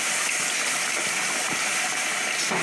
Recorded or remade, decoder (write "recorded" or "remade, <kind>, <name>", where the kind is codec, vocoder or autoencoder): recorded